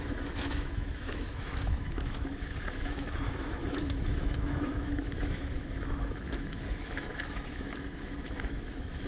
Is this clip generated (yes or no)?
yes